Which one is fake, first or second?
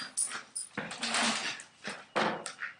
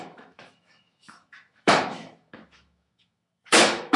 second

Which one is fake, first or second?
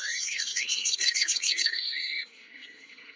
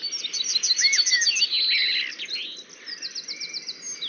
first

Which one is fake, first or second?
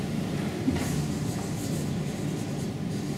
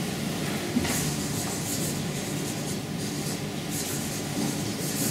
first